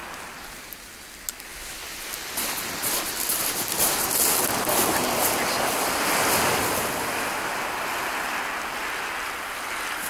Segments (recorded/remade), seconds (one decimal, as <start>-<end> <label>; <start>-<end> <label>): 0.0-10.1 recorded